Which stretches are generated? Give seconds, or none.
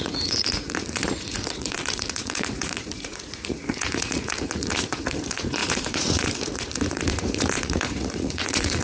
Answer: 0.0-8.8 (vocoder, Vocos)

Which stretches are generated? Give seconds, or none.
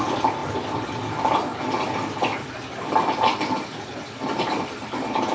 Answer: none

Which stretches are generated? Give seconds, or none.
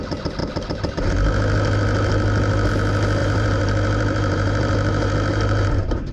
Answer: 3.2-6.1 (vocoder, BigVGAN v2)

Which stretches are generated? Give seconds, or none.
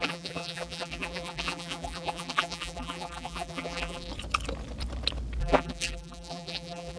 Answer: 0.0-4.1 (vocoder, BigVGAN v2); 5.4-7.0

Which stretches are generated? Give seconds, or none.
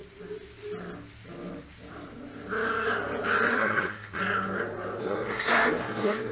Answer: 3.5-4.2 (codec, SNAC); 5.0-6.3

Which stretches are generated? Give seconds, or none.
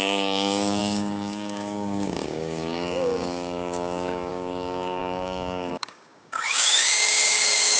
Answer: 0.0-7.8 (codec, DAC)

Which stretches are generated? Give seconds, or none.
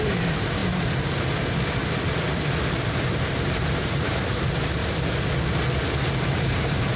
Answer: 0.0-0.6 (vocoder, BigVGAN v2); 2.1-4.8; 6.2-7.0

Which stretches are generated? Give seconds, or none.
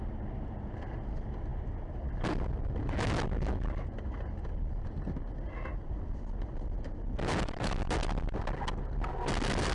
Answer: none